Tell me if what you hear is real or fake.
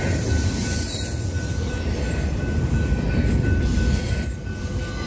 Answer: real